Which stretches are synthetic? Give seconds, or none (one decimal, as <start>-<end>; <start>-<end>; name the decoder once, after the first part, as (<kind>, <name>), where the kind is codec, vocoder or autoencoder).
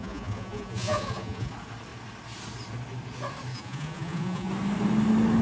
0.0-1.5 (vocoder, Vocos); 3.5-4.5